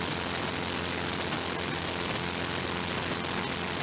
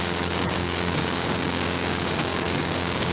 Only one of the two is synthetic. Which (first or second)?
second